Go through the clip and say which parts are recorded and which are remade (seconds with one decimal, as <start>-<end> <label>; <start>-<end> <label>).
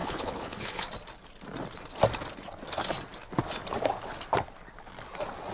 0.0-0.8 remade; 0.8-5.5 recorded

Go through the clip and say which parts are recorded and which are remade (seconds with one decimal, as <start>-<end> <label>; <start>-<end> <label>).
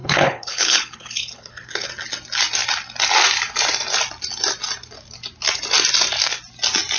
0.0-1.9 remade; 1.9-7.0 recorded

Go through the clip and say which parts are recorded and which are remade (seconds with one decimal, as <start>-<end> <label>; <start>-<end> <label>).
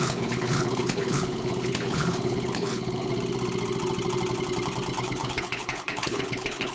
0.0-3.1 remade; 3.1-5.0 recorded; 5.0-6.7 remade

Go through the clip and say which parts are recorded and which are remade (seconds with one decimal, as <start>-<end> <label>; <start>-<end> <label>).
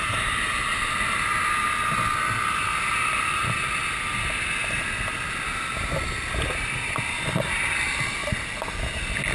0.0-9.3 recorded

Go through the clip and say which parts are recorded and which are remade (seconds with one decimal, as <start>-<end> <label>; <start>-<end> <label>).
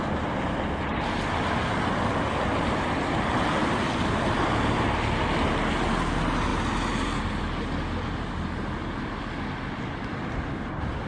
0.0-11.1 recorded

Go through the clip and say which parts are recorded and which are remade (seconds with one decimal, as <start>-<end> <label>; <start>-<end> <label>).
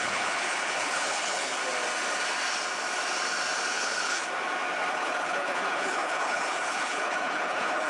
0.0-1.6 remade; 1.6-3.7 recorded; 3.7-4.2 remade; 4.2-4.9 recorded; 4.9-7.9 remade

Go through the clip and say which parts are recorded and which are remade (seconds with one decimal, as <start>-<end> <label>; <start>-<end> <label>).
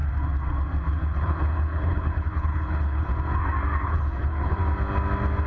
0.0-0.9 recorded; 0.9-3.1 remade; 3.1-3.8 recorded; 3.8-4.6 remade; 4.6-5.5 recorded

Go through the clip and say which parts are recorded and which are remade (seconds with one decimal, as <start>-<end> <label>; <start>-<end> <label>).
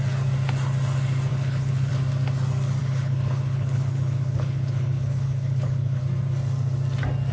0.0-1.3 recorded; 1.3-1.9 remade; 1.9-2.8 recorded; 2.8-6.0 remade; 6.0-7.3 recorded